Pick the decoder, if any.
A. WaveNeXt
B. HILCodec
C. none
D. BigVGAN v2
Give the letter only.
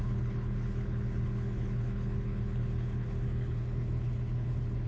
B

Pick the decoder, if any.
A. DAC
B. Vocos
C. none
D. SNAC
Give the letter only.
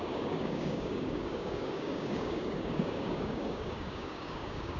A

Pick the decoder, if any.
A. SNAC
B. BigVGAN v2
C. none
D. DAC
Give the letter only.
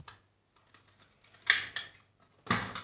C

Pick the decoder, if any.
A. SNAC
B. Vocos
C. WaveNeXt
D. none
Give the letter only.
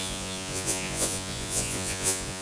B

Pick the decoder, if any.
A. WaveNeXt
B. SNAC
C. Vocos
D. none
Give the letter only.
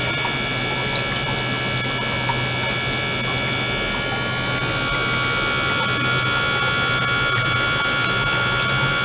D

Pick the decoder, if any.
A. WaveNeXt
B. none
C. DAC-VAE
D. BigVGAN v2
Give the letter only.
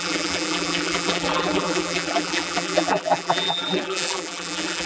D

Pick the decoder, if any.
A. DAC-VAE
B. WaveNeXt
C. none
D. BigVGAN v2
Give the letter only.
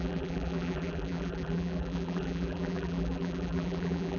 D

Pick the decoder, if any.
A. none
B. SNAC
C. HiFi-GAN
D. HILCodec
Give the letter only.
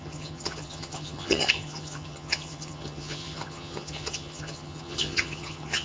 C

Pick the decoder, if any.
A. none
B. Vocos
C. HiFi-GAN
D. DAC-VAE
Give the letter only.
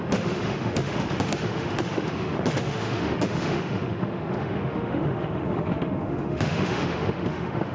D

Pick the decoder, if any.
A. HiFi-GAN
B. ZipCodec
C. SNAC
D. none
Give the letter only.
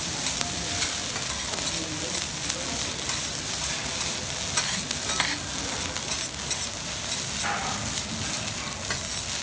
D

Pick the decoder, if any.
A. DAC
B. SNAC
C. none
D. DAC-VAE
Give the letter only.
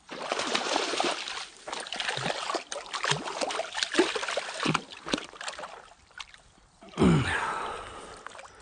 C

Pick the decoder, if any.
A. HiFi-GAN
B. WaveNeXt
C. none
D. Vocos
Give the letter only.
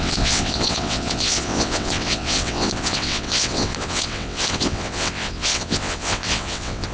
B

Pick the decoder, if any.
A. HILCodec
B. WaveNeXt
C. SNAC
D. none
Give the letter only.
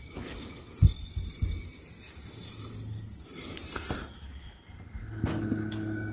D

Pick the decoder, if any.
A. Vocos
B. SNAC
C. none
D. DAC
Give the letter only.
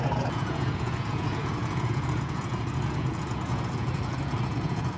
A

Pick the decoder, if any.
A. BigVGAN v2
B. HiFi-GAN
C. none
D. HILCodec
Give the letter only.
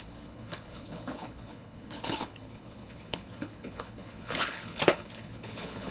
D